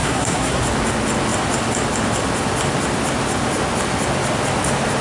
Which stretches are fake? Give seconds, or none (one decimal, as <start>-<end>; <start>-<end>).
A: 0.0-0.6